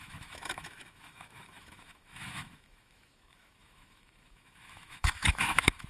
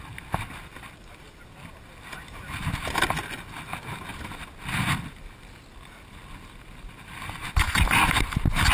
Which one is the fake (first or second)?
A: first